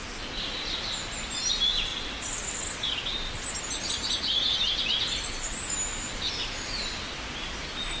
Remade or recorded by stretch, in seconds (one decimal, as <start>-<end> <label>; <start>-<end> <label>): 0.0-8.0 recorded